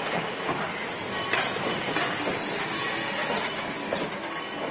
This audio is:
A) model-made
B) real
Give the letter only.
B